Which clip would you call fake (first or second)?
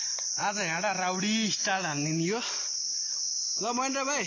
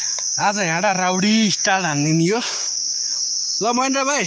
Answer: second